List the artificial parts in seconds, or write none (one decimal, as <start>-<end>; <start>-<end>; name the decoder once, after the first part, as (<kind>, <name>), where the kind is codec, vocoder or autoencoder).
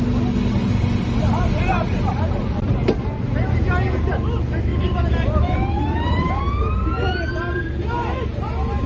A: 0.6-1.1 (vocoder, BigVGAN v2); 4.7-6.4